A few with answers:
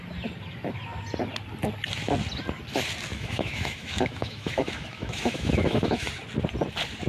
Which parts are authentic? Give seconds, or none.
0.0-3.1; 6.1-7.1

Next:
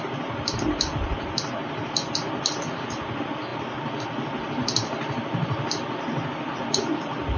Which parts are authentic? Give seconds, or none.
0.0-7.4

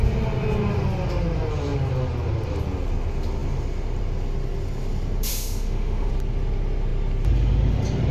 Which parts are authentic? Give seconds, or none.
0.0-5.3; 6.1-8.1